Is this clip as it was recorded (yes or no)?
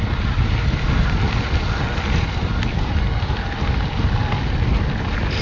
yes